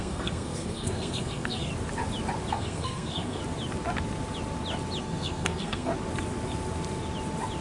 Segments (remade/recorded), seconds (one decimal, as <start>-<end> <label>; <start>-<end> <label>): 0.0-1.7 remade; 1.7-2.5 recorded; 2.5-3.4 remade; 3.4-5.0 recorded; 5.0-5.9 remade; 5.9-7.6 recorded